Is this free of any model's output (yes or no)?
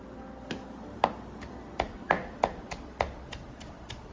yes